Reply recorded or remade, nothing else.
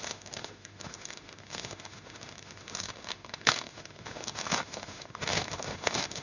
remade